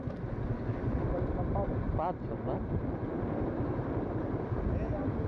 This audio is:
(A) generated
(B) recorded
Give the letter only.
B